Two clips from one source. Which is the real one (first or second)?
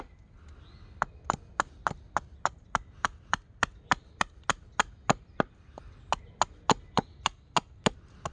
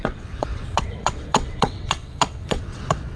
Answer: first